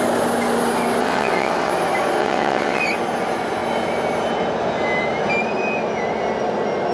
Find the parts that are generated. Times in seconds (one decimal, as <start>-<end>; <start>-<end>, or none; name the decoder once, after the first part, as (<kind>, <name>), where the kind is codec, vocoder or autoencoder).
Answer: 1.0-1.7 (vocoder, WaveNeXt); 2.2-2.8